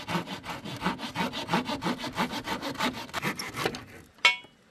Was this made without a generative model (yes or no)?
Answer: yes